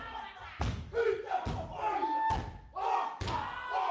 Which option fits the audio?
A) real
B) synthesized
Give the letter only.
A